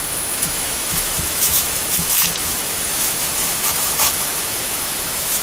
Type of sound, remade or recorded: remade